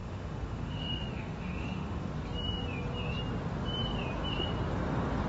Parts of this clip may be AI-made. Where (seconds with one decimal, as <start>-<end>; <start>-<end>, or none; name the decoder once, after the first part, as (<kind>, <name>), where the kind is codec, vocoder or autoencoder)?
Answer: 0.0-2.1 (autoencoder, DAC-VAE)